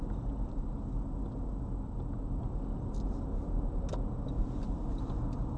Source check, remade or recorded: recorded